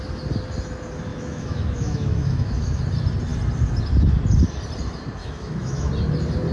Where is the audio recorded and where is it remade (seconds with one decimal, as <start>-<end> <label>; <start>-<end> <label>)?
0.0-1.1 recorded; 1.1-2.8 remade; 2.8-5.2 recorded; 5.2-5.9 remade; 5.9-6.5 recorded